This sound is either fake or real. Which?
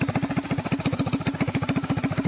real